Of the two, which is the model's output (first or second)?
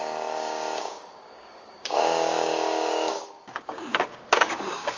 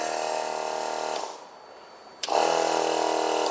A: first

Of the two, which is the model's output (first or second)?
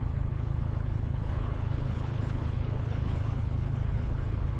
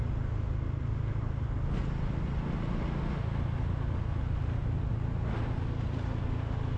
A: first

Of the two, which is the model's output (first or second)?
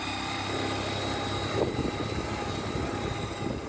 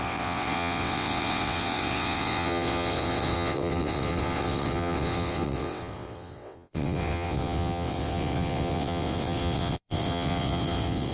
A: second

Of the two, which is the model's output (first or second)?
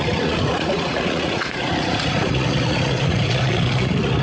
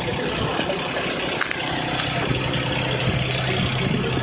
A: first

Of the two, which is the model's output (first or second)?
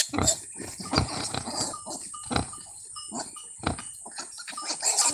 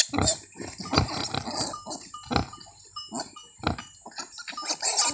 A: first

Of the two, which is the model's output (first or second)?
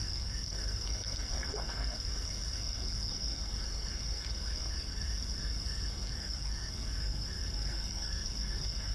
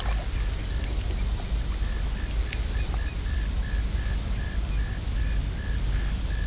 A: first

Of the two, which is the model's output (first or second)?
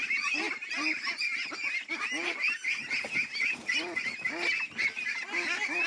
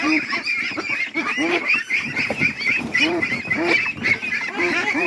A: second